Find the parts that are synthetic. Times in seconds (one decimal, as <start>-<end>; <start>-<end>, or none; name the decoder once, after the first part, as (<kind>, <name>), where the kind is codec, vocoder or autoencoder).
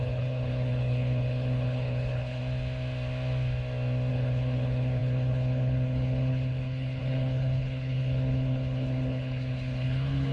0.0-2.4 (codec, HILCodec); 4.1-10.3